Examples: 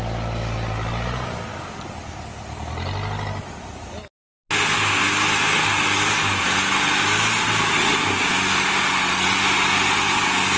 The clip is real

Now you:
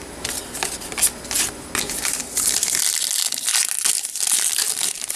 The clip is real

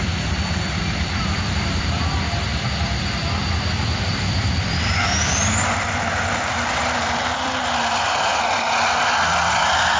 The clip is fake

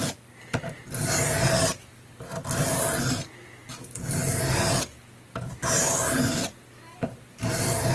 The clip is real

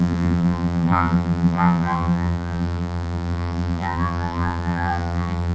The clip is fake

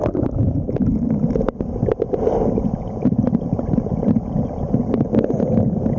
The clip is fake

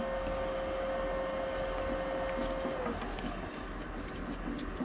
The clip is real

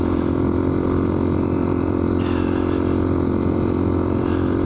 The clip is fake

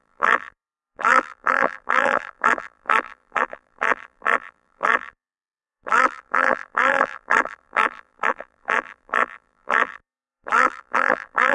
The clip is fake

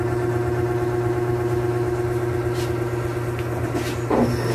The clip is real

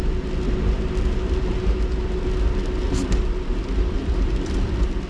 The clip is real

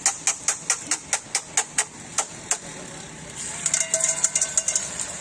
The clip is real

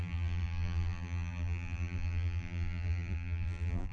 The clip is fake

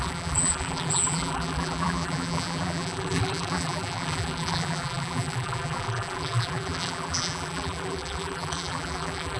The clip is fake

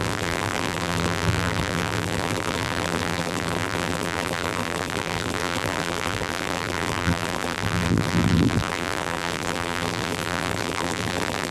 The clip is fake